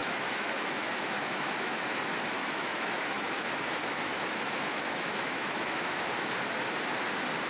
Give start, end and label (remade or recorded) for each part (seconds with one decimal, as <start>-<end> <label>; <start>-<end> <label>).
0.0-2.0 remade; 2.0-2.4 recorded; 2.4-6.1 remade; 6.1-7.5 recorded